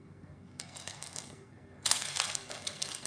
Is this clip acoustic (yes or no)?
no